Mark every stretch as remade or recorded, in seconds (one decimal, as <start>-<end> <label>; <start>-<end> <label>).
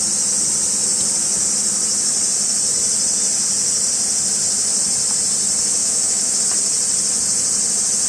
0.0-5.8 recorded; 5.8-6.4 remade; 6.4-8.1 recorded